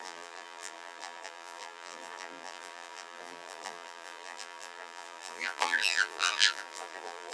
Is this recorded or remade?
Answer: remade